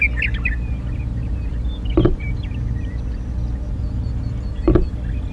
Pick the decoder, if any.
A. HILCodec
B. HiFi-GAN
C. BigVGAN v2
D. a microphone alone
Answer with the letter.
D